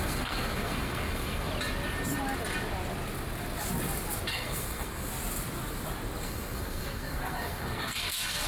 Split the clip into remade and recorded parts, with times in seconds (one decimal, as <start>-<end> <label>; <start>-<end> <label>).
0.0-1.5 remade; 1.5-4.3 recorded; 4.3-5.1 remade; 5.1-6.2 recorded; 6.2-8.5 remade